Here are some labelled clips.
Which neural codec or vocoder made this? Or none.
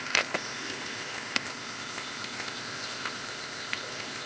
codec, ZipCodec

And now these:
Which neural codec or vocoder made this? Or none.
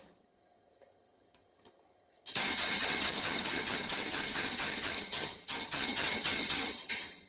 vocoder, HiFi-GAN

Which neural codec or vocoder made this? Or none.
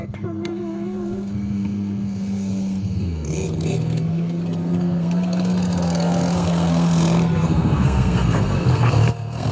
codec, SNAC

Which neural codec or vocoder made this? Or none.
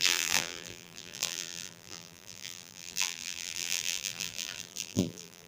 vocoder, BigVGAN v2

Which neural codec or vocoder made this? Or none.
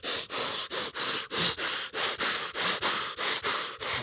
none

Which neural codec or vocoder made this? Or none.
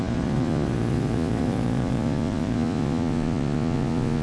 vocoder, Vocos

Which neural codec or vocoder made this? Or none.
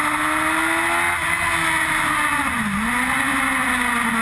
none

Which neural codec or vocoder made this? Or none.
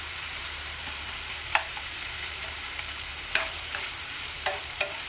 vocoder, BigVGAN v2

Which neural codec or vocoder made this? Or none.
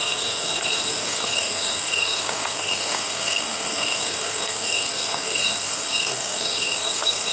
codec, SNAC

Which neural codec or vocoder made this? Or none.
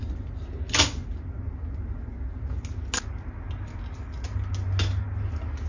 none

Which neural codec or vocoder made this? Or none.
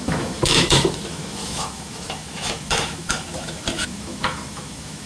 autoencoder, DAC-VAE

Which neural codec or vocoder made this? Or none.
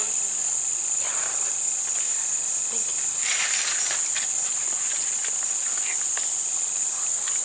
none